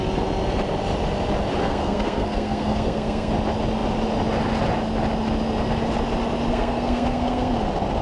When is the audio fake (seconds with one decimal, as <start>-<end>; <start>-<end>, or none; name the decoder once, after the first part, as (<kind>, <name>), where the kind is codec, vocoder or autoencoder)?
1.6-3.3 (codec, SNAC); 6.5-7.5